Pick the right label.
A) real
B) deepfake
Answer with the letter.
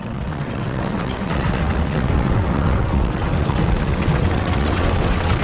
B